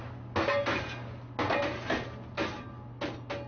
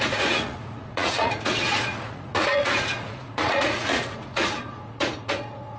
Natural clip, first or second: first